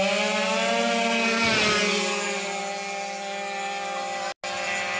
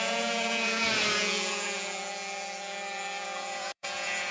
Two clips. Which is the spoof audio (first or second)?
second